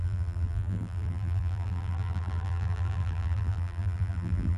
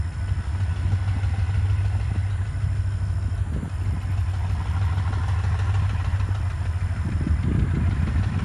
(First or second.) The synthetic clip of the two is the first